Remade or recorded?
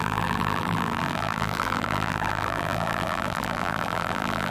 remade